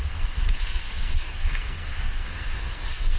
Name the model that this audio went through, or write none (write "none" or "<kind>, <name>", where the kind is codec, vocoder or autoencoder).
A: codec, SNAC